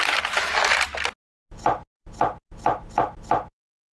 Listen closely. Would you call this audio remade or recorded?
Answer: recorded